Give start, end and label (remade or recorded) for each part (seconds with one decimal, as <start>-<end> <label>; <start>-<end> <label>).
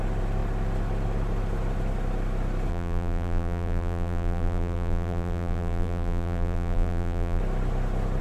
0.0-2.7 recorded; 2.7-7.4 remade; 7.4-8.2 recorded